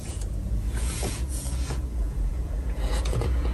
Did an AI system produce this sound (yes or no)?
yes